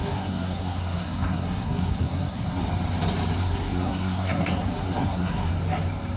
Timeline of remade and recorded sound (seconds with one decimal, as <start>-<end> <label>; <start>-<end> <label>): 0.0-2.6 remade; 2.6-3.4 recorded; 3.4-5.5 remade; 5.5-6.2 recorded